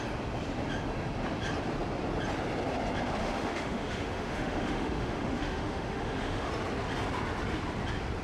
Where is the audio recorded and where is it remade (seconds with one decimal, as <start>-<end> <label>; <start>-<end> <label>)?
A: 0.0-3.2 recorded; 3.2-6.5 remade; 6.5-8.2 recorded